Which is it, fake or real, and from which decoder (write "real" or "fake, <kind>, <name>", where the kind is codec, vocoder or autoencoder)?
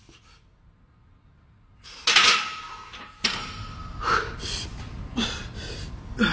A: real